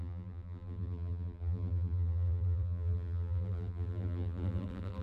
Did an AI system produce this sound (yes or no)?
yes